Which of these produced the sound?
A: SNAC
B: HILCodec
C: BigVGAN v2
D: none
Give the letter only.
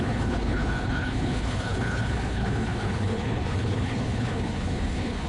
B